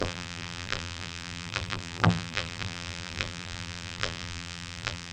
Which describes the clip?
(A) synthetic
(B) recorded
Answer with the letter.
A